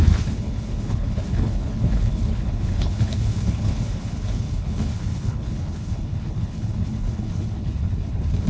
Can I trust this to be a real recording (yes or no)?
no